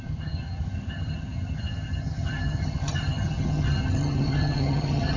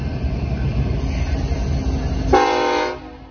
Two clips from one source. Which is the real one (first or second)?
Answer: second